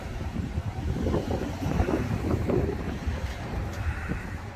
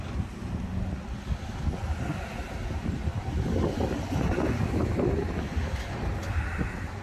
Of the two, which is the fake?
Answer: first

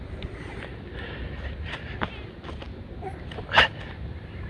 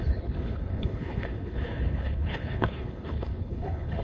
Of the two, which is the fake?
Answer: second